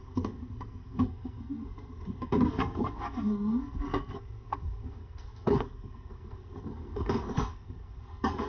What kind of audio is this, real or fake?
fake